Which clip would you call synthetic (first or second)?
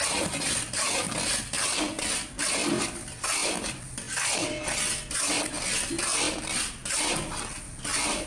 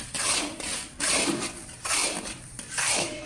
second